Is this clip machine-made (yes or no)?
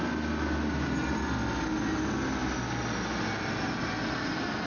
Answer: no